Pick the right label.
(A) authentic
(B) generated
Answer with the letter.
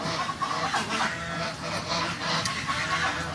A